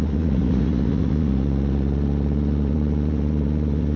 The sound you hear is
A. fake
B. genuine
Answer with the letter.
A